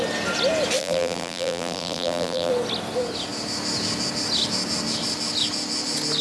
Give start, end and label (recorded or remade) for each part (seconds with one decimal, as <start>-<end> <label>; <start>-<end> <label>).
0.0-0.8 recorded; 0.8-2.5 remade; 2.5-6.2 recorded